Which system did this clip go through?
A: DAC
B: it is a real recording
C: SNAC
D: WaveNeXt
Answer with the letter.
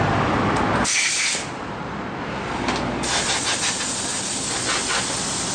B